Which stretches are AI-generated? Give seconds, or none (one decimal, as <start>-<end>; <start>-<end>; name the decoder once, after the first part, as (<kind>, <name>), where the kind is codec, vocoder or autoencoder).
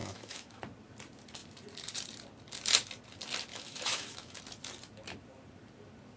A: 0.0-0.6 (autoencoder, DAC-VAE); 3.5-4.4